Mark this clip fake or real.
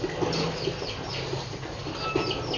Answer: real